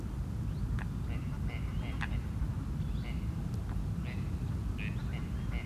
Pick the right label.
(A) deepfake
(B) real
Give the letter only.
B